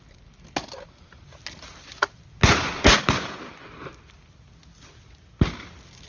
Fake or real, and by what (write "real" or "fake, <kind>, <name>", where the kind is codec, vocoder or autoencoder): real